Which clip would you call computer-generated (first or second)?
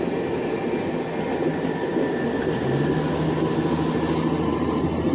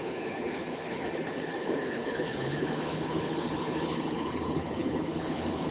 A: second